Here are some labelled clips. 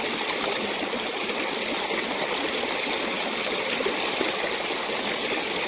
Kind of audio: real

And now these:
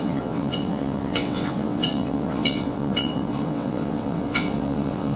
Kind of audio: fake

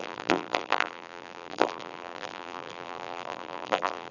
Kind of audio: fake